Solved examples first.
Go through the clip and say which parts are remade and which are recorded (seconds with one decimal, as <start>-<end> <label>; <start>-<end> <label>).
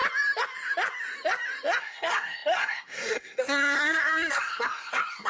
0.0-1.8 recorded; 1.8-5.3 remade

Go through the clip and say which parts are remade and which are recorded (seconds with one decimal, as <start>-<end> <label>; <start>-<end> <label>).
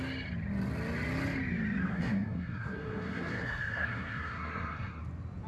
0.0-1.9 recorded; 1.9-5.0 remade; 5.0-5.5 recorded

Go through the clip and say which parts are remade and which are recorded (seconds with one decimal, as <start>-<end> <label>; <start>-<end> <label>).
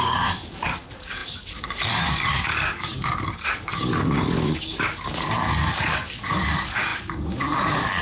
0.0-8.0 remade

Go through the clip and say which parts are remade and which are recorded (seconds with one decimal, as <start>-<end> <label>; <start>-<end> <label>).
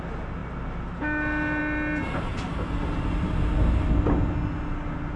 0.0-5.2 recorded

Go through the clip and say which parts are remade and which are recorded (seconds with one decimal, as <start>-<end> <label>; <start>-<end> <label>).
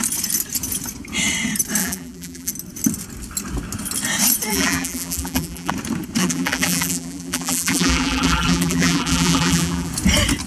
0.0-1.8 recorded; 1.8-2.5 remade; 2.5-4.5 recorded; 4.5-5.7 remade; 5.7-6.2 recorded; 6.2-9.9 remade; 9.9-10.5 recorded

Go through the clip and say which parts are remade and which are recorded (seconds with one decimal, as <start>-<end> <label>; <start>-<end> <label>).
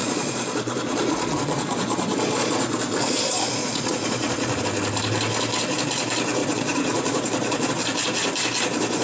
0.0-4.6 remade; 4.6-6.4 recorded; 6.4-7.7 remade; 7.7-9.0 recorded